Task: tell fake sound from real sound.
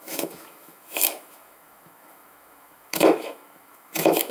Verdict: fake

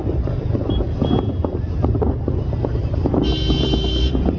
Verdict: real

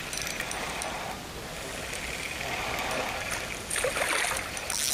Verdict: real